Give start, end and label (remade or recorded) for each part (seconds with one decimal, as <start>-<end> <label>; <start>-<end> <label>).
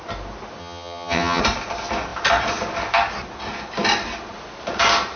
0.0-0.6 recorded; 0.6-1.4 remade; 1.4-5.2 recorded